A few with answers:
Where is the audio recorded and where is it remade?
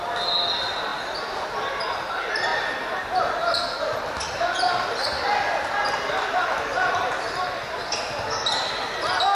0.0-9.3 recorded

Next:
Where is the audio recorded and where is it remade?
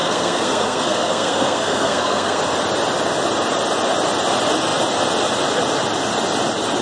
0.0-2.4 remade; 2.4-6.8 recorded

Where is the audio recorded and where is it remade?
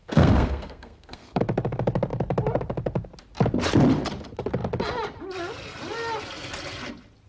0.0-1.4 remade; 1.4-7.3 recorded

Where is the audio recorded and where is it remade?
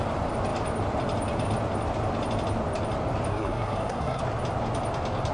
0.0-3.3 recorded; 3.3-4.2 remade; 4.2-5.3 recorded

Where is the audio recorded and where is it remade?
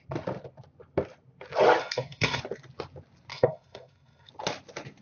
0.0-1.8 recorded; 1.8-2.4 remade; 2.4-3.3 recorded; 3.3-4.3 remade; 4.3-5.0 recorded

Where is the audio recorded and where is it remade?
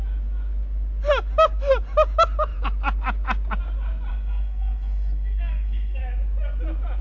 0.0-4.1 recorded; 4.1-6.0 remade; 6.0-7.0 recorded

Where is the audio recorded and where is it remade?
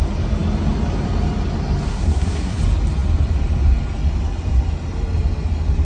0.0-1.9 recorded; 1.9-2.6 remade; 2.6-5.8 recorded